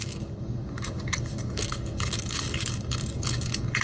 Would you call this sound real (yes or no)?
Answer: no